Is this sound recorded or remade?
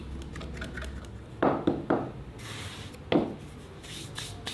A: recorded